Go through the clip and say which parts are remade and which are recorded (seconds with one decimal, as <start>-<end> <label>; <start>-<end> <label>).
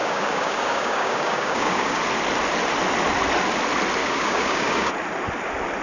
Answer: 0.0-2.0 remade; 2.0-4.0 recorded; 4.0-4.9 remade; 4.9-5.8 recorded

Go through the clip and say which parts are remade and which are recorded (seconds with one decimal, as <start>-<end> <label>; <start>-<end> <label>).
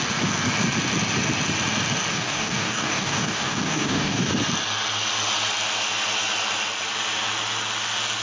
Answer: 0.0-2.1 recorded; 2.1-4.3 remade; 4.3-8.2 recorded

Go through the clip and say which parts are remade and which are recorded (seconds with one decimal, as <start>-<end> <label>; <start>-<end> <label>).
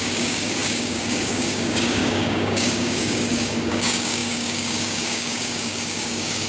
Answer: 0.0-6.5 remade